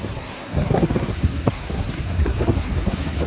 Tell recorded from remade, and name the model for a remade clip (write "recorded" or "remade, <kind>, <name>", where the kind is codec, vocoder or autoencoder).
remade, codec, SNAC